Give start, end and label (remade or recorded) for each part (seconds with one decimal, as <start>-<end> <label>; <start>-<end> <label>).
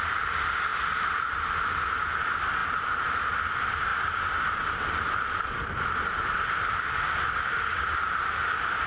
0.0-0.7 remade; 0.7-2.2 recorded; 2.2-2.6 remade; 2.6-3.4 recorded; 3.4-8.9 remade